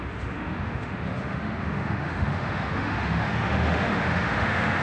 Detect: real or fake fake